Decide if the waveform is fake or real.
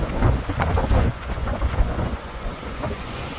fake